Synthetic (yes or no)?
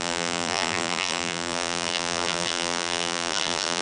yes